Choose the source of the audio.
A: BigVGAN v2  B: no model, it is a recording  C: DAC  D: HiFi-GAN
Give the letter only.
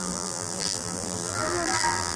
A